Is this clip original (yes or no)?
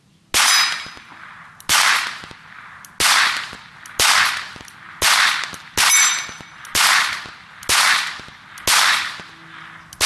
yes